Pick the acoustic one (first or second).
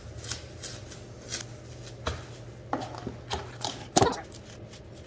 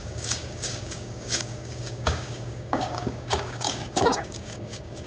first